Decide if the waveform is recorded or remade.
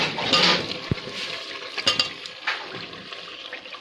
recorded